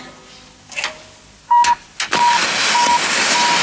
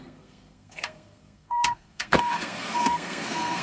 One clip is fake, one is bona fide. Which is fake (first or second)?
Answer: second